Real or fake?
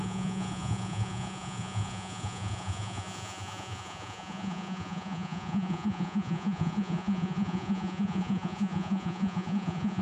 fake